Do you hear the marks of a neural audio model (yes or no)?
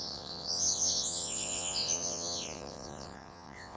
yes